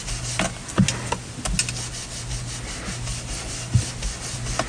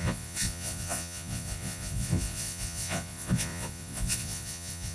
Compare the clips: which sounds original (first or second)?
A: first